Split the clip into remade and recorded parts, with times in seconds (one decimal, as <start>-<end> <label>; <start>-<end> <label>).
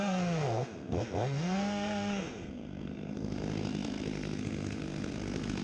0.0-5.6 remade